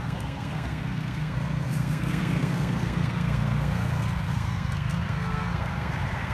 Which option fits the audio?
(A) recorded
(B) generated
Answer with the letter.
B